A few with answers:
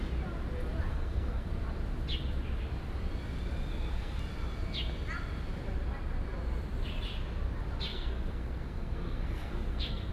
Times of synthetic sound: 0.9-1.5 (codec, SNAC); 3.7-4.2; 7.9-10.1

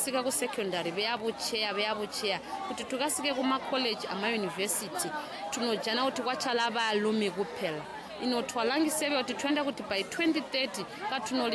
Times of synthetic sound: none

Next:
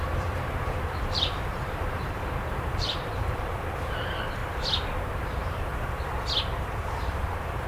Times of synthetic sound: 0.0-4.4 (vocoder, BigVGAN v2); 5.0-5.7; 6.4-7.7

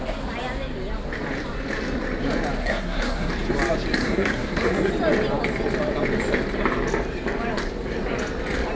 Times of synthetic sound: 2.6-3.3 (codec, SNAC); 4.0-4.9